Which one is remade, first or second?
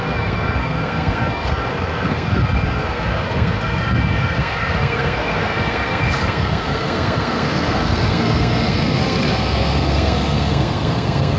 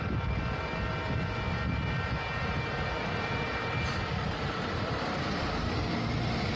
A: first